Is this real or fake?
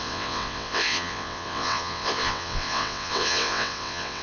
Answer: fake